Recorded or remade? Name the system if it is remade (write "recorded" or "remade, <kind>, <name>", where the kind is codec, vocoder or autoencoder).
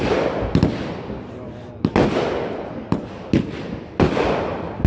recorded